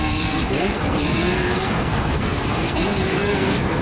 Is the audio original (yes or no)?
no